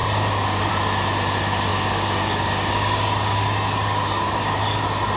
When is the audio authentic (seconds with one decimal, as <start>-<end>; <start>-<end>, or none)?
0.7-1.7; 4.8-5.2